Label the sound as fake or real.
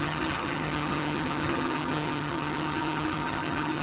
fake